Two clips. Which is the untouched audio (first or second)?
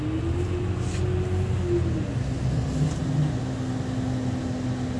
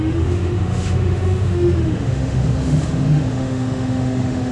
first